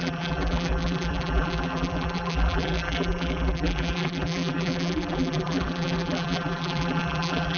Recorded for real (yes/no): no